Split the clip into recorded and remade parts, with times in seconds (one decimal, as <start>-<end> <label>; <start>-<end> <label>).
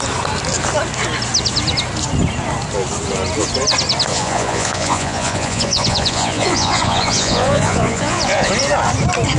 0.0-4.1 recorded; 4.1-8.5 remade; 8.5-9.4 recorded